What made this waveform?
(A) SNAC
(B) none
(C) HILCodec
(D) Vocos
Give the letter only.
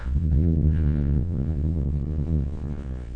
D